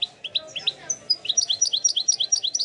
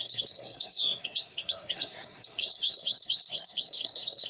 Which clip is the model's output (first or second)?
second